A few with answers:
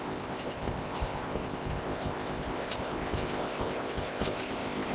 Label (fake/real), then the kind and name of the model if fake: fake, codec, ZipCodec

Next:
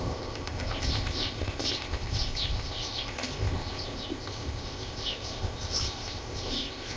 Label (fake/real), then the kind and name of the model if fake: fake, codec, ZipCodec